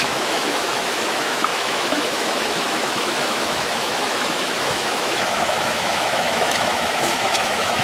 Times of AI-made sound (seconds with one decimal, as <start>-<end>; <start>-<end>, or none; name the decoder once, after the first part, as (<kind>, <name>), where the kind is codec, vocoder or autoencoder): 0.0-7.8 (autoencoder, DAC-VAE)